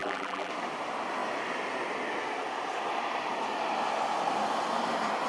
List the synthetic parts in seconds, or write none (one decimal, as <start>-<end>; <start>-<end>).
0.0-0.5